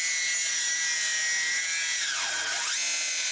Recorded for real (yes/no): yes